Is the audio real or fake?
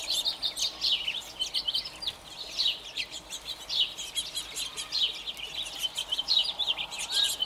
real